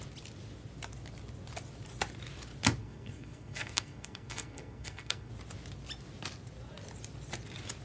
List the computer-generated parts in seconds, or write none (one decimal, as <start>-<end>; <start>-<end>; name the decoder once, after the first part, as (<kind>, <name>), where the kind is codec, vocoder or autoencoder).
2.8-5.3 (codec, SNAC)